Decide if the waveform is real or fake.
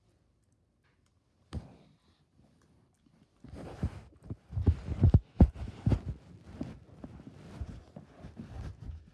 real